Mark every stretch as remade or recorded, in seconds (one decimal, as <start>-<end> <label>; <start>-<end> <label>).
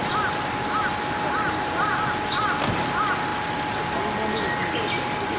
0.0-5.4 recorded